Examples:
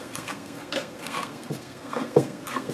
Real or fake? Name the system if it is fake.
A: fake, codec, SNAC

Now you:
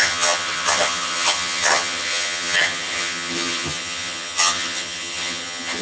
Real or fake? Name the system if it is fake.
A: fake, vocoder, HiFi-GAN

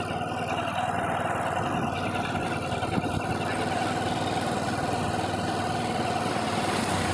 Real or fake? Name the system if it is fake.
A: real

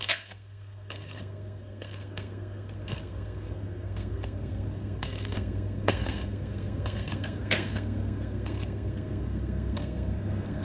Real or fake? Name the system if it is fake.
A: fake, codec, SNAC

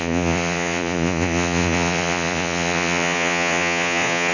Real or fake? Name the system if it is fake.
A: fake, vocoder, Vocos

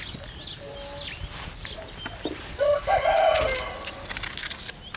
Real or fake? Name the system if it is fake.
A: real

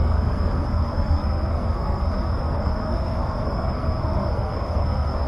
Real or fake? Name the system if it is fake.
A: fake, codec, SNAC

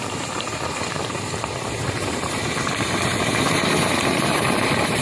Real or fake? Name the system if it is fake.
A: fake, vocoder, BigVGAN v2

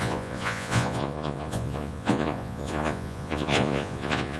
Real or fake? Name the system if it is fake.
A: fake, vocoder, Vocos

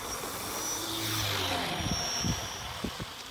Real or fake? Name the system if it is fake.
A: real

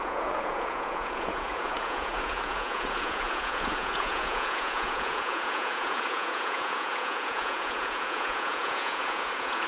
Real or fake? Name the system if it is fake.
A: fake, vocoder, Vocos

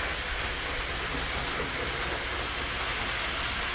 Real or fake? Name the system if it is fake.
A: real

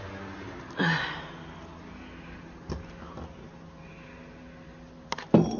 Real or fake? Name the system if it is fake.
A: real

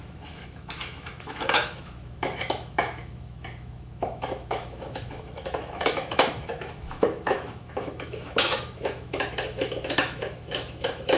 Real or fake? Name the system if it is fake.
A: fake, autoencoder, DAC-VAE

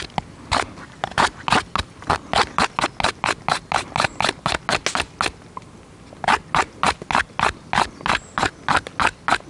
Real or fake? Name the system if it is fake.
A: real